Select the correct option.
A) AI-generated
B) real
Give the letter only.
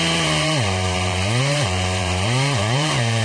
A